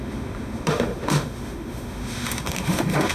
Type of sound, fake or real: fake